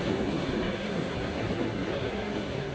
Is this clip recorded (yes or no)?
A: no